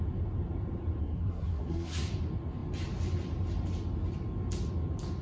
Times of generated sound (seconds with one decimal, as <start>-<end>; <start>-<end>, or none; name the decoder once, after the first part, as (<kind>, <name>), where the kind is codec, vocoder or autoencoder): 1.0-2.1 (codec, SNAC)